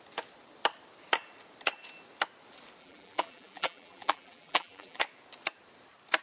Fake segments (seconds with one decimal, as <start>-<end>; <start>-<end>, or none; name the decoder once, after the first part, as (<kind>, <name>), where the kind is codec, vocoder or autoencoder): 2.8-5.0 (vocoder, BigVGAN v2)